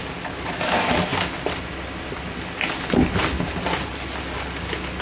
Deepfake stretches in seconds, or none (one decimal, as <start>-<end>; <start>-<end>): none